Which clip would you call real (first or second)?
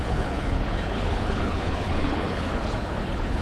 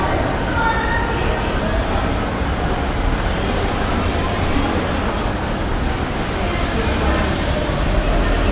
second